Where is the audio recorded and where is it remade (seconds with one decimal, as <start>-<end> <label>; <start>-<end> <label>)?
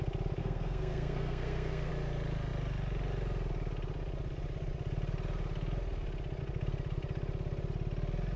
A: 0.0-0.4 recorded; 0.4-1.9 remade; 1.9-8.4 recorded